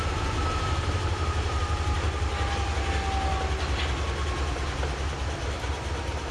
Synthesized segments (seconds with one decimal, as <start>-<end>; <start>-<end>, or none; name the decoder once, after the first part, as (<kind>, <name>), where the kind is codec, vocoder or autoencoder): 0.0-2.3 (vocoder, BigVGAN v2)